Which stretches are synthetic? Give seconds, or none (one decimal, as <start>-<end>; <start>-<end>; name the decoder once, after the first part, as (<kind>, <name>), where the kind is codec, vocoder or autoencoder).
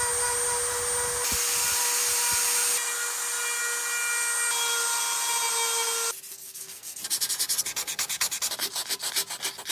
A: 6.3-7.0 (codec, SNAC)